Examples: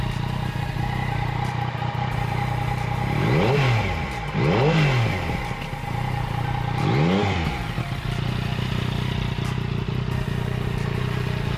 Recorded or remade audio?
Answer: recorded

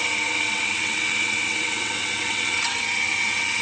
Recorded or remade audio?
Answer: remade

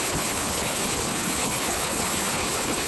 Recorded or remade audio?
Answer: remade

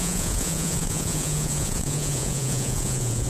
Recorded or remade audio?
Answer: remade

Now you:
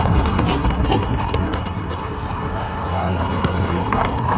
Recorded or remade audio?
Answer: remade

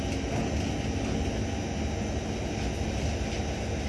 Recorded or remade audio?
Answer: recorded